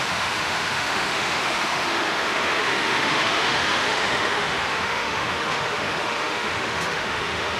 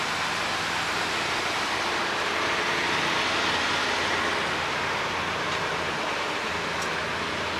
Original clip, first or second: second